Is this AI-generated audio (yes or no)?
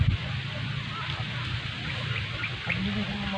no